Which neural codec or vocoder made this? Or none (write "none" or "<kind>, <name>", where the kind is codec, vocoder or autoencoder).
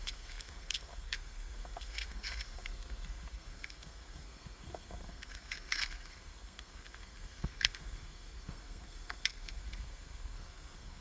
codec, SNAC